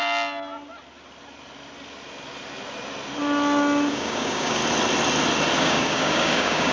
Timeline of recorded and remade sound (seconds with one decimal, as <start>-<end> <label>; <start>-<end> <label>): 0.0-3.9 recorded; 3.9-4.6 remade; 4.6-5.6 recorded; 5.6-6.7 remade